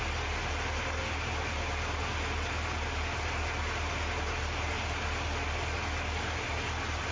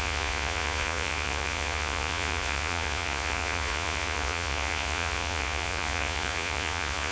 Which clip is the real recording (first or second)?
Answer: first